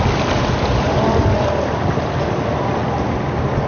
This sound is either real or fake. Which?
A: real